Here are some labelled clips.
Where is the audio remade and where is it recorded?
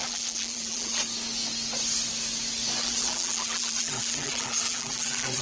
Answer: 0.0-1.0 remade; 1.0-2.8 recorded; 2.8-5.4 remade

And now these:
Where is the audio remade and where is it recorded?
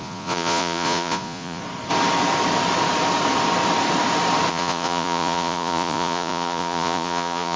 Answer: 0.0-1.6 remade; 1.6-4.5 recorded; 4.5-7.6 remade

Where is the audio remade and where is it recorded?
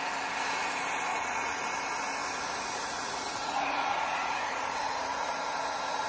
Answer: 0.0-1.1 recorded; 1.1-1.6 remade; 1.6-2.2 recorded; 2.2-6.1 remade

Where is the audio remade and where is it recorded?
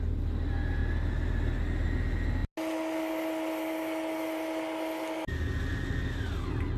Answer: 0.0-6.8 recorded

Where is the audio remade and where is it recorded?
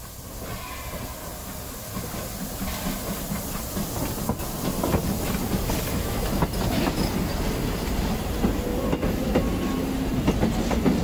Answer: 0.0-11.0 recorded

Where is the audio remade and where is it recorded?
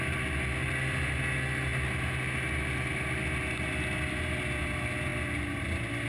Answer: 0.0-6.1 recorded